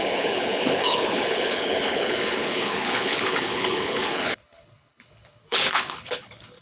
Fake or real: fake